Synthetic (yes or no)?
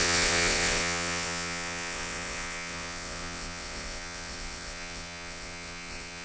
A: yes